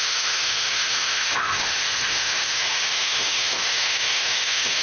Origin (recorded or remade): remade